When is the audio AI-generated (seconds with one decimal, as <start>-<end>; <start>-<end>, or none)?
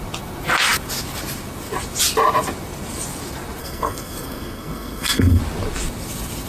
3.6-5.4